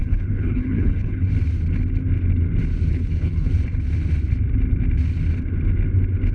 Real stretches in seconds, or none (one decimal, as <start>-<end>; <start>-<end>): 1.3-2.9; 3.5-6.3